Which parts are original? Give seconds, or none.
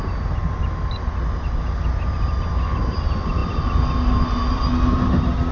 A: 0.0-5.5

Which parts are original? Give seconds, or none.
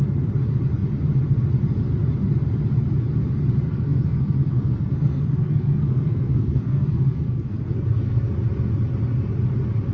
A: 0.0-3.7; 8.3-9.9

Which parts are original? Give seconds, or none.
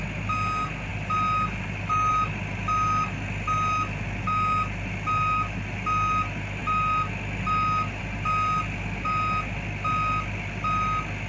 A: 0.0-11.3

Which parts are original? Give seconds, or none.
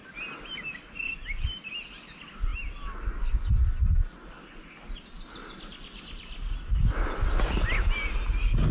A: 0.0-8.7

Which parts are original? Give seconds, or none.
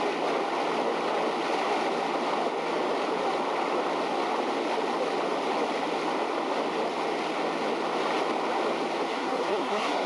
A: 0.0-9.1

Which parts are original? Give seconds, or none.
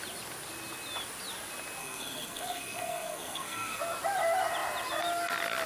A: 0.0-1.8; 3.8-5.7